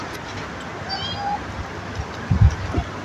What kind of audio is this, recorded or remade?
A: recorded